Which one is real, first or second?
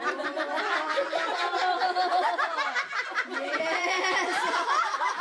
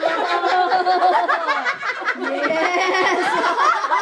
second